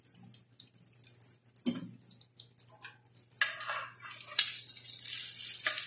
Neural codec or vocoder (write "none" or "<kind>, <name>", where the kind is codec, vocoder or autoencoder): none